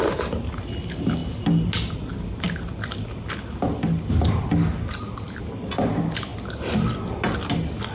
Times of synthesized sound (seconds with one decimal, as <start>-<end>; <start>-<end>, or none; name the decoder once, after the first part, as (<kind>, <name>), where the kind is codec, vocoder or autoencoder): none